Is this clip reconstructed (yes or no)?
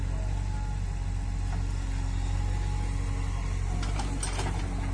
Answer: no